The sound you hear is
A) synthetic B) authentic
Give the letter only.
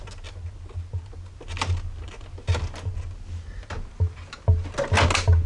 B